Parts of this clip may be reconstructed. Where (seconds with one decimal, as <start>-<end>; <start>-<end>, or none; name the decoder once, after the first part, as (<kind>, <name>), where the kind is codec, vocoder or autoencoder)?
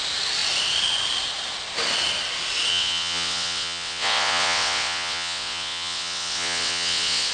2.7-7.3 (vocoder, WaveNeXt)